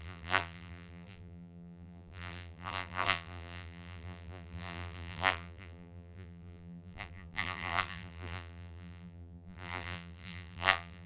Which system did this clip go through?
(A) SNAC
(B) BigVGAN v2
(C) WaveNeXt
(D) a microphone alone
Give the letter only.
B